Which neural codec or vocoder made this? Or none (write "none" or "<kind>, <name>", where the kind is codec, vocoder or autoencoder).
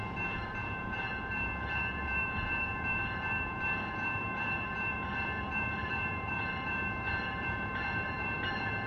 vocoder, BigVGAN v2